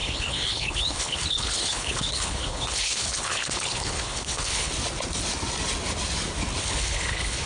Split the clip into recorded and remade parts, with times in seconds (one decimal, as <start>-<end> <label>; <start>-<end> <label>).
0.0-4.7 remade; 4.7-6.6 recorded; 6.6-7.5 remade